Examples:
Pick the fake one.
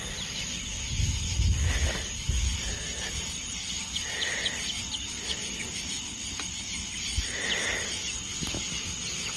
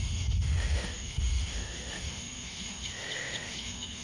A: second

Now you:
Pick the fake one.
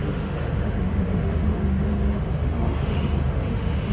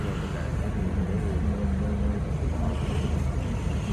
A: first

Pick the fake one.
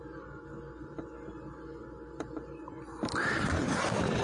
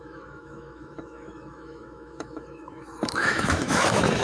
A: second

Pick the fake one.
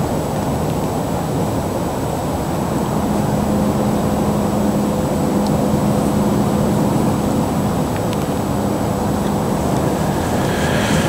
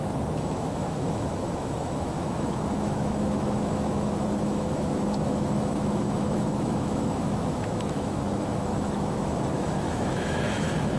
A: second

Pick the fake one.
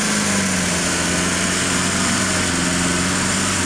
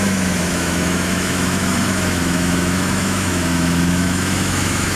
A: second